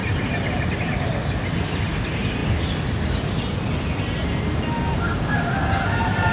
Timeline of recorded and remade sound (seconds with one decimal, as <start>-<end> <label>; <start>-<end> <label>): 0.0-6.3 recorded